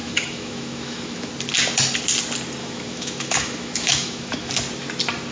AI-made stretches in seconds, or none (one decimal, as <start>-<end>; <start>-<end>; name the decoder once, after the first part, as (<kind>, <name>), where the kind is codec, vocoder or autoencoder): 0.0-1.3 (autoencoder, DAC-VAE); 2.6-4.5